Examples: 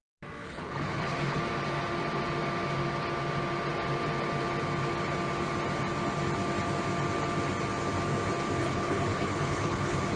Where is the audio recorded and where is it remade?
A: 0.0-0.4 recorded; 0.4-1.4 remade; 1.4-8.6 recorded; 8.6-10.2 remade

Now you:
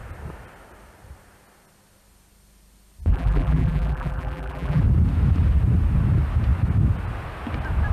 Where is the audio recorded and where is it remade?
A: 0.0-3.1 recorded; 3.1-4.8 remade; 4.8-7.9 recorded

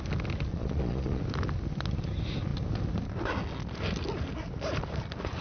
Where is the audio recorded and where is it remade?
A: 0.0-0.5 recorded; 0.5-1.2 remade; 1.2-5.4 recorded

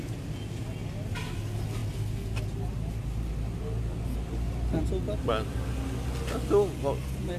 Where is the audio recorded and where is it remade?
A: 0.0-7.4 recorded

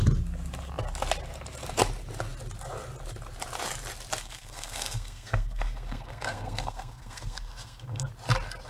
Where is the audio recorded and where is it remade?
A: 0.0-4.2 recorded; 4.2-8.1 remade; 8.1-8.7 recorded

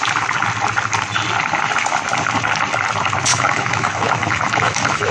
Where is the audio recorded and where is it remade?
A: 0.0-3.3 recorded; 3.3-5.1 remade

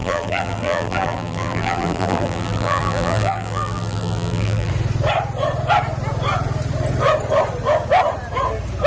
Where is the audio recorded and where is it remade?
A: 0.0-4.7 remade; 4.7-8.9 recorded

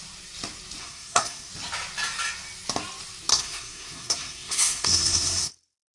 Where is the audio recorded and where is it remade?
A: 0.0-0.8 recorded; 0.8-1.5 remade; 1.5-3.3 recorded; 3.3-5.5 remade; 5.5-5.9 recorded